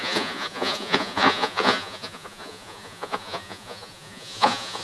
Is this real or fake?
fake